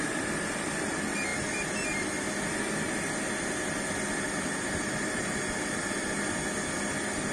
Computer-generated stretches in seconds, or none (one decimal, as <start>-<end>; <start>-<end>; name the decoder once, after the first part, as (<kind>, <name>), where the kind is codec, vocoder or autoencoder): none